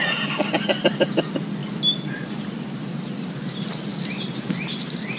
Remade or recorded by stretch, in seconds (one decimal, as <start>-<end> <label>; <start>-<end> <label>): 0.0-5.2 recorded